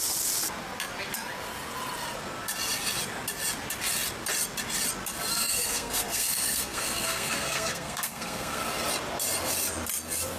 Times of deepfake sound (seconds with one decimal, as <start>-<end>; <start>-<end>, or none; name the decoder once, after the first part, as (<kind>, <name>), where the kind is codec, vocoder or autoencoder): 5.3-8.6 (codec, SNAC)